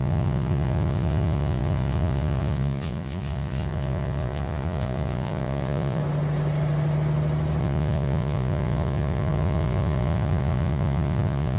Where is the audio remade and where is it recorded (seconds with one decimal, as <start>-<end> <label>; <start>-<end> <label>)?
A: 0.0-6.0 remade; 6.0-7.6 recorded; 7.6-11.6 remade